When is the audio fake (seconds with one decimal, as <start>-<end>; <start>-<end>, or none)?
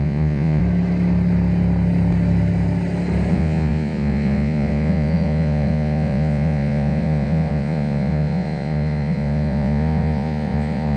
0.0-0.6; 3.3-11.0